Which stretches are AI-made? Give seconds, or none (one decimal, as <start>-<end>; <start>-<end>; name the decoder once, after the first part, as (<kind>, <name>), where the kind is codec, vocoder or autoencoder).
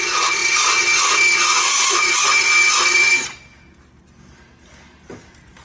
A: none